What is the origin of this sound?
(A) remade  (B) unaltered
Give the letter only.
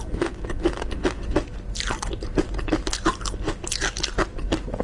B